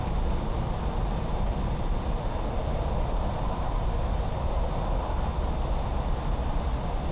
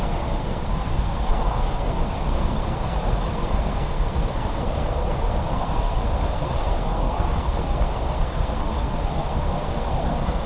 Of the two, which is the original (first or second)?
first